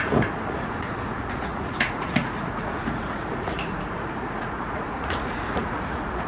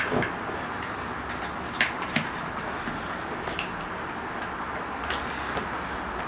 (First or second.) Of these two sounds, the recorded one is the second